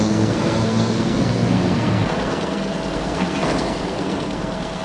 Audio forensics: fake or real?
fake